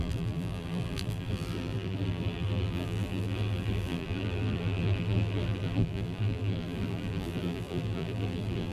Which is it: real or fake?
fake